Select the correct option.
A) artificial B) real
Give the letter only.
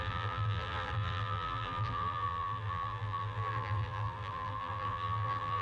A